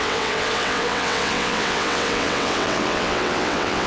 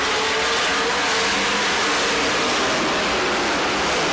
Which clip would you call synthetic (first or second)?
first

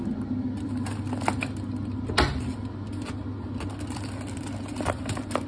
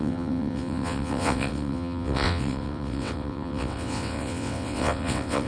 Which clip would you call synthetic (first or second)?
second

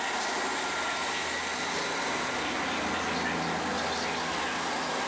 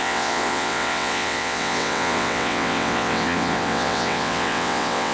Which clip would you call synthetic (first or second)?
second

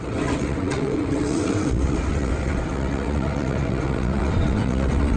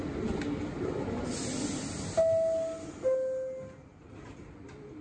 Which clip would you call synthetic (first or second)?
first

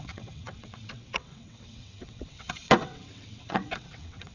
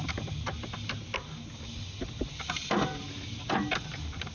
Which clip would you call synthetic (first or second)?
first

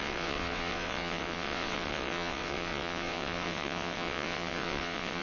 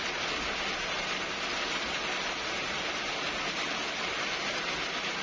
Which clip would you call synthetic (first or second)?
first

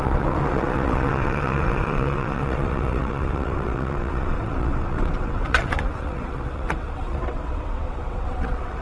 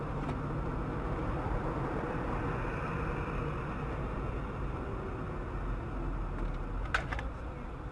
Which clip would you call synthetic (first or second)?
first